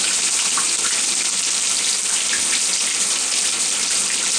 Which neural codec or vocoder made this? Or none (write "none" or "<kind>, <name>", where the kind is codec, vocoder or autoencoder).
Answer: none